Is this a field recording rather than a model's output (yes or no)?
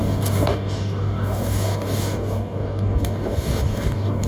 no